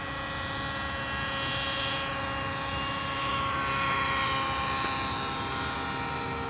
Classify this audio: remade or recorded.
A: recorded